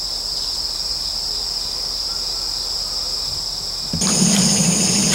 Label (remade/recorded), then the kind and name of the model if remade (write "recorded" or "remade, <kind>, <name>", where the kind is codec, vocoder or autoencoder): recorded